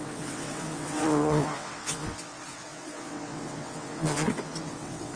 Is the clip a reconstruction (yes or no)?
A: yes